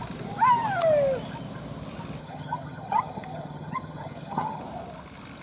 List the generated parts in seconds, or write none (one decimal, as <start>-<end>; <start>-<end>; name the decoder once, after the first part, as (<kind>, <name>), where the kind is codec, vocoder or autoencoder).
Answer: 2.2-4.6 (vocoder, HiFi-GAN)